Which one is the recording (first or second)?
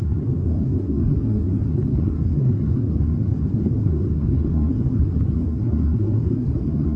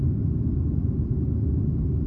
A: second